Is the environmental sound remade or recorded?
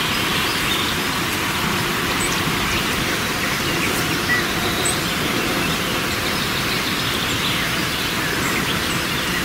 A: recorded